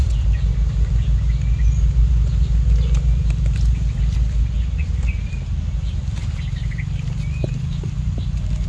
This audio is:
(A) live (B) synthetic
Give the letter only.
A